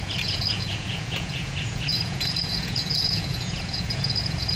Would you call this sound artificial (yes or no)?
yes